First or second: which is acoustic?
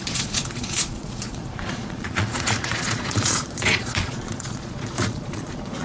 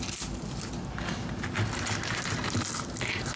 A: second